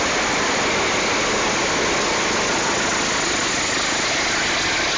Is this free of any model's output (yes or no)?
yes